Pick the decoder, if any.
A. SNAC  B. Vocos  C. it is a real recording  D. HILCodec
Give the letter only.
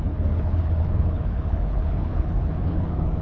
D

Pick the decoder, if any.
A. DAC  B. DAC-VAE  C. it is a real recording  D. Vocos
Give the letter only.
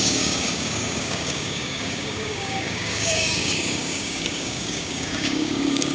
A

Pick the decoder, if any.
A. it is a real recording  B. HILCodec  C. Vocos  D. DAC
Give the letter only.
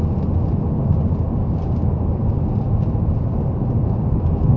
A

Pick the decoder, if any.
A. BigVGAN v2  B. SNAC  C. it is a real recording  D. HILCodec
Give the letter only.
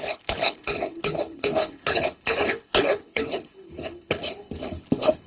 D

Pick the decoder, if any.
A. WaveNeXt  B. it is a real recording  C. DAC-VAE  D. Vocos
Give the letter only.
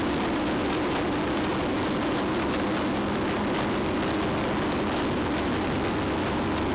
B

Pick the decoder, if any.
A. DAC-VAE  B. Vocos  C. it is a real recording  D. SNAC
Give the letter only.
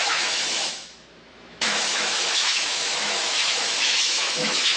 A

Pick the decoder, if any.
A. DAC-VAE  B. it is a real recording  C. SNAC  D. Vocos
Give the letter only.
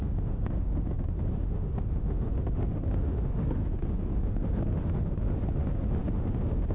A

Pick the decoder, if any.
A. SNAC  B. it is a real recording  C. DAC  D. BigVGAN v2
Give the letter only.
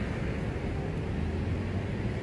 B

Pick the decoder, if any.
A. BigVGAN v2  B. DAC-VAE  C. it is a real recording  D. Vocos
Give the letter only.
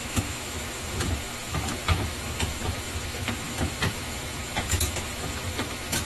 B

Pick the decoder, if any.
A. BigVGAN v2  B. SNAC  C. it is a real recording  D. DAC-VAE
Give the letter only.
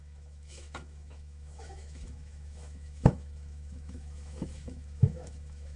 D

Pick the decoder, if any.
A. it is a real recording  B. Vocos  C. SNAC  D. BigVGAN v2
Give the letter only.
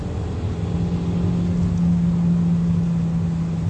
A